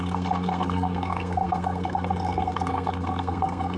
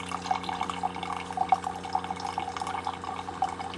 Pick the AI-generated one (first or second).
first